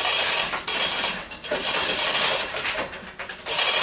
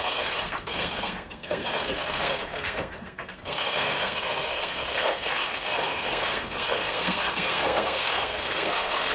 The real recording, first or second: first